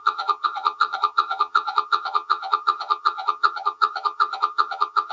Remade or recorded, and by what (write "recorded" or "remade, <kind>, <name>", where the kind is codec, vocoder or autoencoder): remade, vocoder, HiFi-GAN